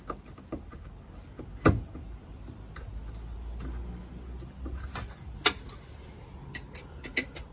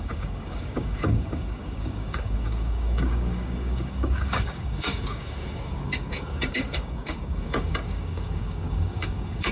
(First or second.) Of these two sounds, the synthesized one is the second